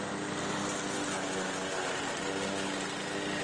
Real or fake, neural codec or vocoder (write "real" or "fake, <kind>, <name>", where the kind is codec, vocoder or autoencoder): real